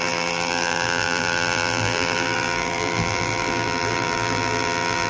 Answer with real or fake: fake